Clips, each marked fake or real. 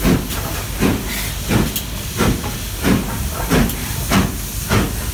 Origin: real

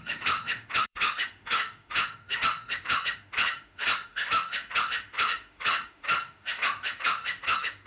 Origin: fake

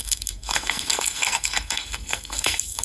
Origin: fake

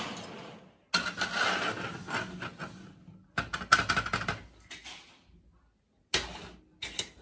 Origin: real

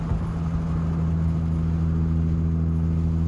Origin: real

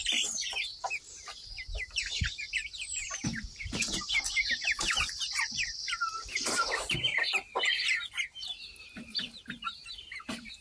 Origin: fake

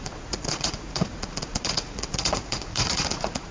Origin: fake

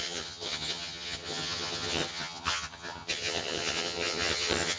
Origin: fake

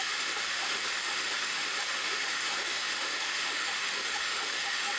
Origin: fake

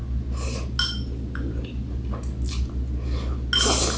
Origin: real